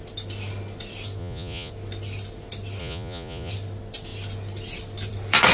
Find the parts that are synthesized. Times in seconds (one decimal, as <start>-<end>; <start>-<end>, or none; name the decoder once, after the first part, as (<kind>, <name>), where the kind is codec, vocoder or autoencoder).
1.2-1.7 (vocoder, Vocos); 2.8-3.5

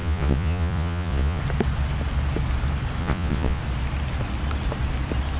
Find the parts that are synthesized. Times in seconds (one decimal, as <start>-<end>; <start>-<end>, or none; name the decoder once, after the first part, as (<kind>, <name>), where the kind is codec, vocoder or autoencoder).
0.0-1.4 (vocoder, Vocos); 3.0-3.6

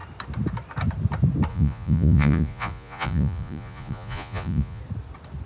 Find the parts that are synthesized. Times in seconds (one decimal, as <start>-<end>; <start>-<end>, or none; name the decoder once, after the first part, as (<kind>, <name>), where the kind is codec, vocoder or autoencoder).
1.5-4.8 (vocoder, Vocos)

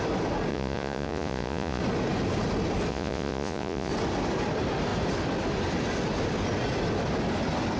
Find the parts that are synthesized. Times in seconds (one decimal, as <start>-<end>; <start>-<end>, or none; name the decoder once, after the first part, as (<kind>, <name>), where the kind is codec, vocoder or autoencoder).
0.5-1.8 (vocoder, Vocos); 2.9-3.9

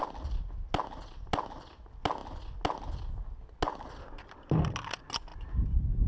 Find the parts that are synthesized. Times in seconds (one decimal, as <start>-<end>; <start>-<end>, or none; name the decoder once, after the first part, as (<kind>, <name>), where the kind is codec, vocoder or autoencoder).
none

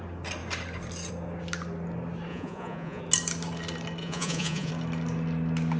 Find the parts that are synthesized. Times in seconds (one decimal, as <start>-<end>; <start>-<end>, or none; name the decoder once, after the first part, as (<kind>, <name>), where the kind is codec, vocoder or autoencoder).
2.3-3.0 (vocoder, Vocos); 4.0-4.7

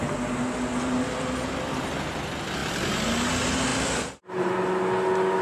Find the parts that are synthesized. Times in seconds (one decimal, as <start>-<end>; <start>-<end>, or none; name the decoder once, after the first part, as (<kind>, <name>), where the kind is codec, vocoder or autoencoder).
none

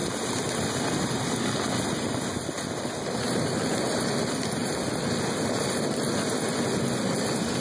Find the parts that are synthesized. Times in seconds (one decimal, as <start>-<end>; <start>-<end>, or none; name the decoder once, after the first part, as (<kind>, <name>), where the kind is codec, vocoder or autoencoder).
none